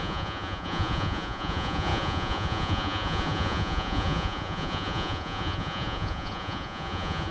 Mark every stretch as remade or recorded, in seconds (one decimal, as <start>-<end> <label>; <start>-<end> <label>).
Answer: 0.0-7.3 remade